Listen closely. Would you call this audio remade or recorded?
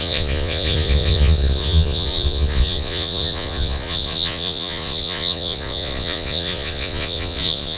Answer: remade